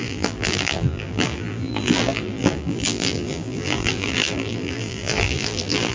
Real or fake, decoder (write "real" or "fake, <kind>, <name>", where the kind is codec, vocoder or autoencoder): fake, vocoder, BigVGAN v2